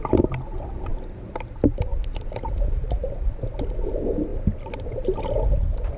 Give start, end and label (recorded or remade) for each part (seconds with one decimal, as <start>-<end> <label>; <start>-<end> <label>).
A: 0.0-6.0 recorded